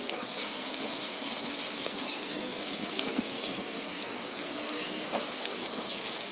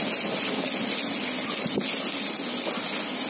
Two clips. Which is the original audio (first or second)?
second